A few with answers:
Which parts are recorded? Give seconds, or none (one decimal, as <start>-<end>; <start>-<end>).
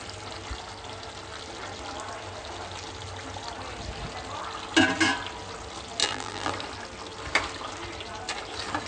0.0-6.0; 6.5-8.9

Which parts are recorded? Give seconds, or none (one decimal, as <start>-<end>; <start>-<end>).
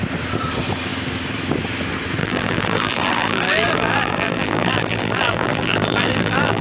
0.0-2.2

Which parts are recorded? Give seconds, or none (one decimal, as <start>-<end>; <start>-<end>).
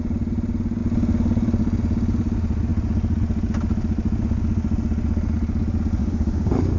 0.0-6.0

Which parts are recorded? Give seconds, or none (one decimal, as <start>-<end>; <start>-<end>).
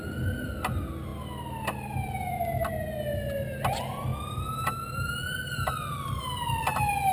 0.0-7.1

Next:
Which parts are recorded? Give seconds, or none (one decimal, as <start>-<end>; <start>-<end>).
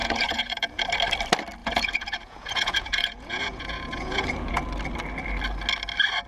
0.8-1.6; 4.6-6.3